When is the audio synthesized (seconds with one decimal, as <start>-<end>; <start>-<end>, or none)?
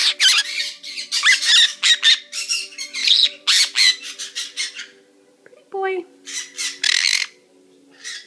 none